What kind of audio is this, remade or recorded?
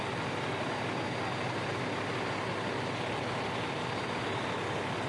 recorded